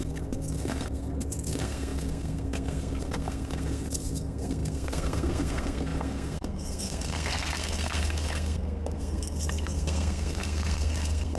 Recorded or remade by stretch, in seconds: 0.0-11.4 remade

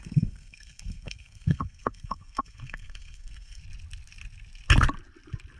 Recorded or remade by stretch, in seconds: 0.0-3.6 remade; 3.6-5.6 recorded

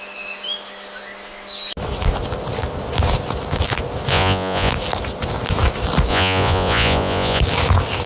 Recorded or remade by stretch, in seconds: 0.0-4.1 recorded; 4.1-4.7 remade; 4.7-6.1 recorded; 6.1-7.4 remade; 7.4-8.1 recorded

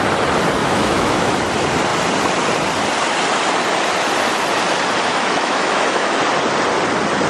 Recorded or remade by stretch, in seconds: 0.0-0.6 recorded; 0.6-1.3 remade; 1.3-5.1 recorded; 5.1-6.2 remade; 6.2-7.3 recorded

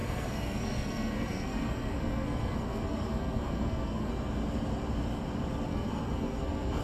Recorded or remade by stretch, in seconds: 0.0-4.1 remade; 4.1-5.7 recorded; 5.7-6.8 remade

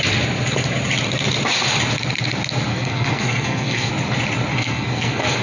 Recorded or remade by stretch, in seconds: 0.0-2.7 recorded; 2.7-3.9 remade; 3.9-4.5 recorded; 4.5-5.4 remade

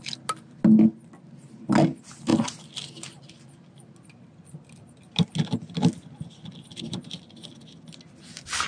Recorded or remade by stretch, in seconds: 0.0-8.7 recorded